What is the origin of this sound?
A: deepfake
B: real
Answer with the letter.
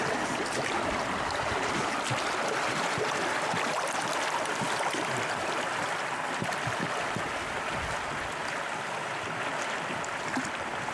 B